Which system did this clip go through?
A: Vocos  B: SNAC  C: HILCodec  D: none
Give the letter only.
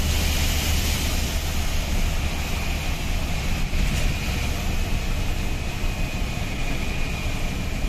D